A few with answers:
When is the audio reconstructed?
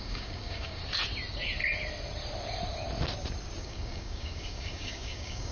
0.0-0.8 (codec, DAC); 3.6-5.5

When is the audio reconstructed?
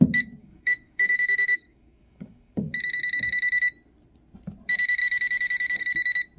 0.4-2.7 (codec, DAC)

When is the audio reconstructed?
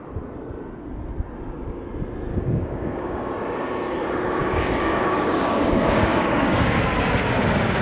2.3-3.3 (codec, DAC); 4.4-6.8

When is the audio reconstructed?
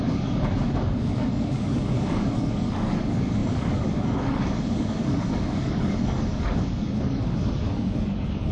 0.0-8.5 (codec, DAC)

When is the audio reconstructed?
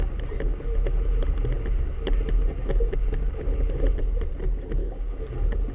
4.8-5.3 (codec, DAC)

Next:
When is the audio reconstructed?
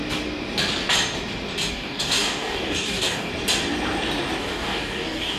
1.7-3.3 (codec, DAC); 4.4-5.4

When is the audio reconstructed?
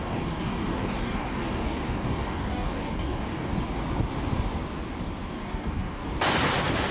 0.0-3.5 (codec, DAC); 5.3-6.0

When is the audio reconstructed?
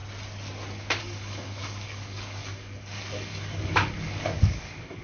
1.0-5.0 (codec, DAC)